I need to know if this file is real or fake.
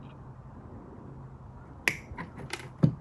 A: real